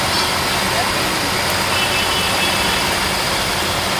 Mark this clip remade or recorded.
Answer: recorded